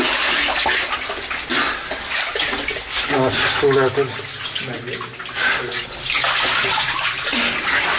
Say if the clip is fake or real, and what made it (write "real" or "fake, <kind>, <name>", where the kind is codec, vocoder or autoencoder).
real